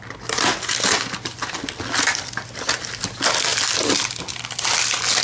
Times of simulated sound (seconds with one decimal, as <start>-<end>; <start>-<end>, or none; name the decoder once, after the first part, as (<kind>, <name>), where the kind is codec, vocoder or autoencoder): none